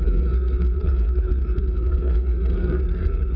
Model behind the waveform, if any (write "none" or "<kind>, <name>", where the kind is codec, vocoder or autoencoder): codec, SNAC